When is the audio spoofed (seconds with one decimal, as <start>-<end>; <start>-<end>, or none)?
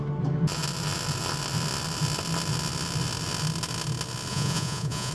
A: 4.3-5.1